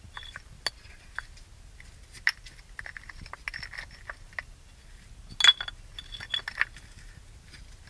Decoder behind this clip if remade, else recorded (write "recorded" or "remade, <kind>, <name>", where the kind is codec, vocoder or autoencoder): recorded